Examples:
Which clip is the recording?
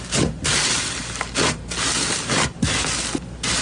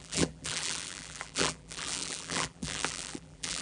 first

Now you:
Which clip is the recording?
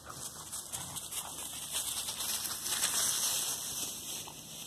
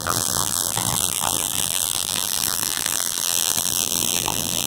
first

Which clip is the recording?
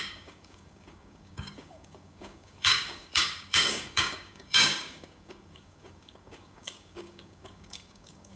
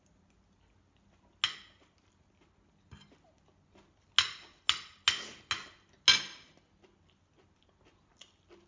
second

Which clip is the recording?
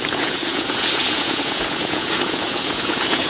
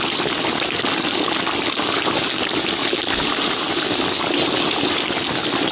second